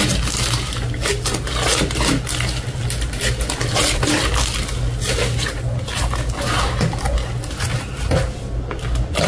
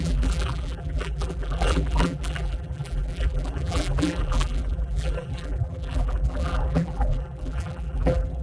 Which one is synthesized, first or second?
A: second